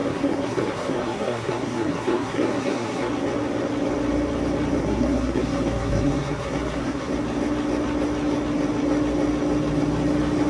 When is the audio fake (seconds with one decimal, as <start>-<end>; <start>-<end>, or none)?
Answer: 0.0-3.1; 4.8-7.1